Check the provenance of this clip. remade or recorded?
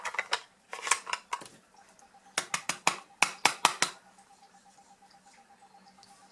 recorded